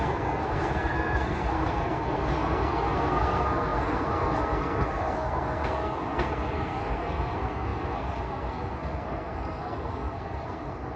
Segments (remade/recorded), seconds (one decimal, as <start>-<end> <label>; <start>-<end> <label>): 0.0-11.0 remade